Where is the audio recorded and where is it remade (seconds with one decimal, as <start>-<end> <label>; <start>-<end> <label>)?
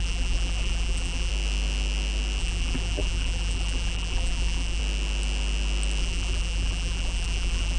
0.0-1.3 remade; 1.3-2.4 recorded; 2.4-4.8 remade; 4.8-6.0 recorded; 6.0-7.8 remade